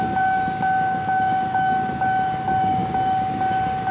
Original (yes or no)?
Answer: no